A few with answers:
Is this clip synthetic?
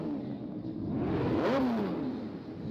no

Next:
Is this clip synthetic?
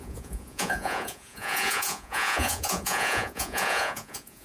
yes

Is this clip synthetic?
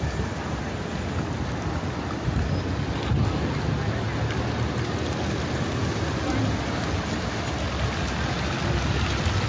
no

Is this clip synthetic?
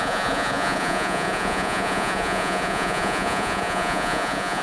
yes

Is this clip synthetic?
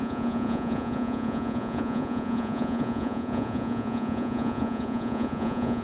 yes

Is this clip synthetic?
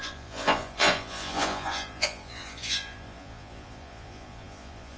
yes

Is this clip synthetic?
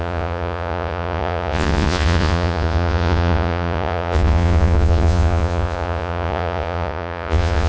yes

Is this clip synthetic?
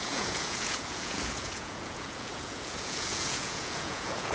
yes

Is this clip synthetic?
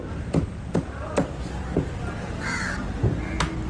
no